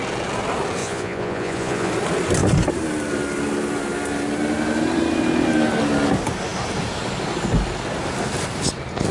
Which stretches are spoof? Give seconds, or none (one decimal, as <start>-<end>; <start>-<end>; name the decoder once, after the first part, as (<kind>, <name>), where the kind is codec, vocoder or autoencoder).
0.8-1.9 (vocoder, Vocos)